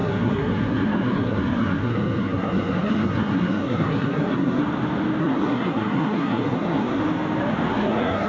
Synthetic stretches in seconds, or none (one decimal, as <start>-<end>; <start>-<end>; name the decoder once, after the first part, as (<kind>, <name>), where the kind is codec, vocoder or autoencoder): 0.0-4.6 (codec, SNAC); 5.2-7.0; 7.7-8.3